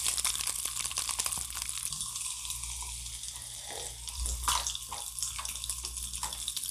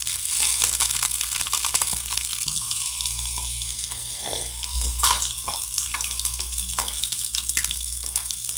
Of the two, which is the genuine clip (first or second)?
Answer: first